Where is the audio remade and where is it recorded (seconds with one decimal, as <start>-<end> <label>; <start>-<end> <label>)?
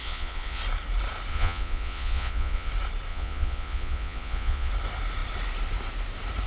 0.0-0.6 remade; 0.6-1.3 recorded; 1.3-2.7 remade; 2.7-3.1 recorded; 3.1-4.7 remade; 4.7-6.5 recorded